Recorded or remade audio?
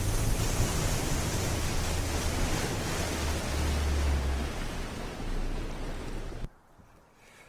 recorded